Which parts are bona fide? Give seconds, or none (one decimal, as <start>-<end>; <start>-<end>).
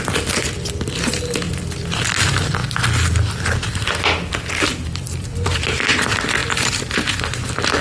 2.6-4.6; 6.4-7.1